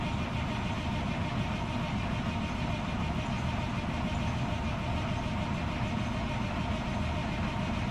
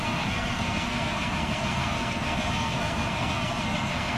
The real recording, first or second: first